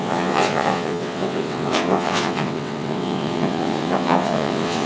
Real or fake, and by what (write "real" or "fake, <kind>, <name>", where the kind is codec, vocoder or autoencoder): fake, vocoder, WaveNeXt